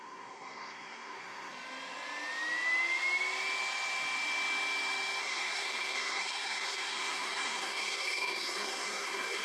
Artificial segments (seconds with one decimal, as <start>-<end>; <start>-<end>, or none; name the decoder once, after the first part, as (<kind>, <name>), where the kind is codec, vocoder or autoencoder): 0.0-1.5 (codec, SNAC); 5.2-9.4